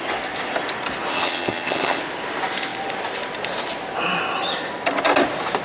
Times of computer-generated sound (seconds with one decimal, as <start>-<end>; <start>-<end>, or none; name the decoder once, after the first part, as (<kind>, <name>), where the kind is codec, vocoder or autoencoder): 1.1-2.0 (vocoder, HiFi-GAN)